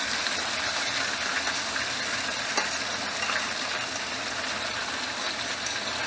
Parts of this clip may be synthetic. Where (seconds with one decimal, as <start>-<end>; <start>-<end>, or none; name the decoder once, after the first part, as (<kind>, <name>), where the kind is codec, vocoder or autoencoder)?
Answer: 0.0-4.8 (vocoder, BigVGAN v2)